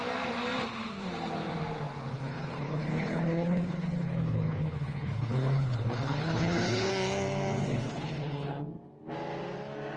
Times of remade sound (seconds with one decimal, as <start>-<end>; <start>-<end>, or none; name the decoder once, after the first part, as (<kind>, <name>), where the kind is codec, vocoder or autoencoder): 2.1-6.9 (codec, HILCodec); 7.6-8.6